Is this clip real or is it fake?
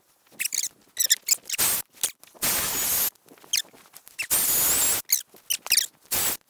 real